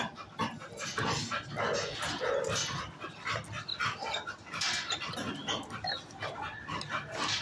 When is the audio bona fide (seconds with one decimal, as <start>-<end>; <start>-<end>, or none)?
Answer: 0.0-7.4

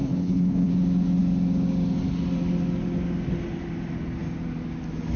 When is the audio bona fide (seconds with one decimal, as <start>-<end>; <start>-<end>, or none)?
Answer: 0.7-5.2

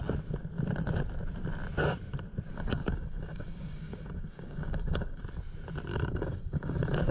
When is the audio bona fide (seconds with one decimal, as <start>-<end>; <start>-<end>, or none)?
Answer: 0.0-2.5; 5.2-5.9